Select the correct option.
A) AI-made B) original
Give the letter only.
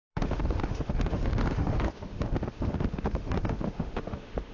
A